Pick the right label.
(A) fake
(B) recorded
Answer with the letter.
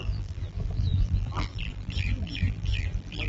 A